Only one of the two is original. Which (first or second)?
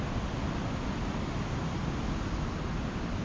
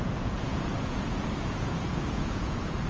first